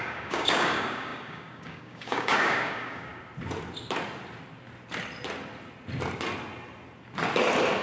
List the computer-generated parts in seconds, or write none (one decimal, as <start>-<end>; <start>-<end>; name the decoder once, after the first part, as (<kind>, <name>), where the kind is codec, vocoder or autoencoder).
0.0-3.1 (codec, DAC)